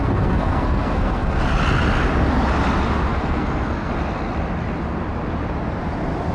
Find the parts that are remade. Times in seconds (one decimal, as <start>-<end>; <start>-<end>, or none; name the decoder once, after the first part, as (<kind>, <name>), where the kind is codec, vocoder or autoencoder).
0.0-1.4 (codec, SNAC); 3.1-3.9